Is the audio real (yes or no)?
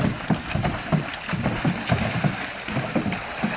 yes